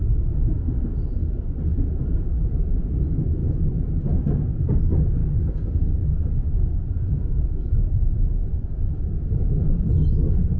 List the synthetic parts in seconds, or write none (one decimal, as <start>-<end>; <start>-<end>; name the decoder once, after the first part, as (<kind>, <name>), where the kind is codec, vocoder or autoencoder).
1.7-2.8 (vocoder, Vocos); 3.4-3.9; 5.2-9.5

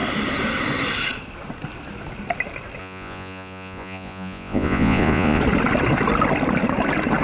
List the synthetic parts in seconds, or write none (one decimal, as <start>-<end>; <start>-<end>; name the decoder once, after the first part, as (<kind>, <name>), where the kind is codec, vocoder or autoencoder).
2.8-5.4 (vocoder, Vocos)

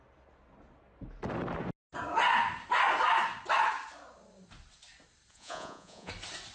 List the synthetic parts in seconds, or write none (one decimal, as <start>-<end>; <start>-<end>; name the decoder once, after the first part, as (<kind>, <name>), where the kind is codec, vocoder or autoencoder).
5.3-6.1 (vocoder, Vocos)

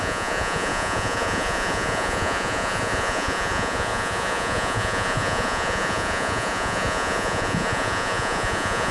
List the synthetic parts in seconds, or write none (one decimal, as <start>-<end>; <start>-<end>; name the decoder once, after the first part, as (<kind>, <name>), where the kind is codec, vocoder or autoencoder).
0.0-8.9 (vocoder, Vocos)

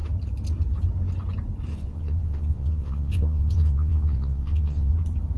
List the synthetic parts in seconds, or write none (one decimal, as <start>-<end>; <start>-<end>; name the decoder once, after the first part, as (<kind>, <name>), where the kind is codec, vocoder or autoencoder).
1.7-4.9 (vocoder, Vocos)

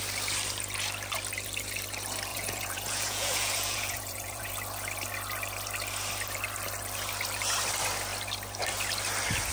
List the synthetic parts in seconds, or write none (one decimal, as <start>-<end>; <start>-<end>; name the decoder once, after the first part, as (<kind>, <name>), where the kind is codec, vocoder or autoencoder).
2.3-4.5 (vocoder, Vocos)